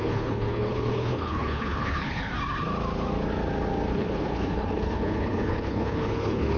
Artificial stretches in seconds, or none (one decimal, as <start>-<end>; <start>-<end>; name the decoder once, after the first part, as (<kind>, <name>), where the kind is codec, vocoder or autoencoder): 0.0-2.3 (codec, HILCodec); 3.9-6.6